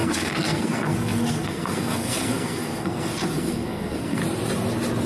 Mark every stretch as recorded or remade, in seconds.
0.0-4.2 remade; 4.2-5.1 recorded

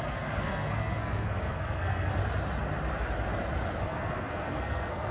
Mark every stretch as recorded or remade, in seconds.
0.0-2.2 remade; 2.2-3.8 recorded; 3.8-5.1 remade

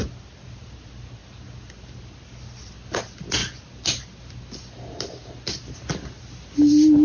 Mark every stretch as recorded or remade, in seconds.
0.0-7.0 recorded

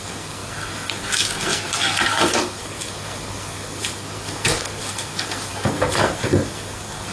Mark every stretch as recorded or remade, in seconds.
0.0-7.1 remade

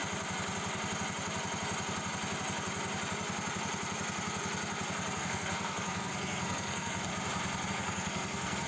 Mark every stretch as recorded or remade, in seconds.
0.0-5.2 recorded; 5.2-7.1 remade; 7.1-7.7 recorded; 7.7-8.7 remade

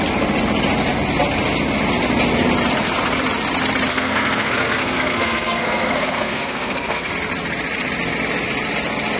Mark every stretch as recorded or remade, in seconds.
0.0-3.9 recorded; 3.9-7.1 remade; 7.1-9.2 recorded

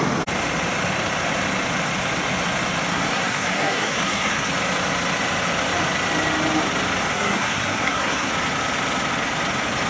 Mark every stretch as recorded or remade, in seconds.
0.0-2.9 recorded; 2.9-4.5 remade; 4.5-7.1 recorded; 7.1-8.3 remade; 8.3-9.9 recorded